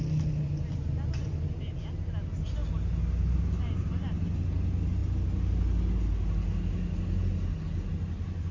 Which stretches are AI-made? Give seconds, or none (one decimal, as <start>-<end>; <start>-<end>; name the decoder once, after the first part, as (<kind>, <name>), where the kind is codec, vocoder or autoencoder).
none